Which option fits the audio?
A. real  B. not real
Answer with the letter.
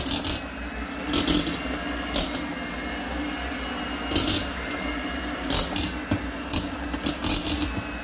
A